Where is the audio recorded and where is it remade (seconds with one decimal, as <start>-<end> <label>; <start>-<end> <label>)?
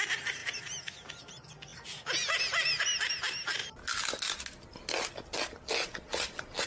0.0-6.7 recorded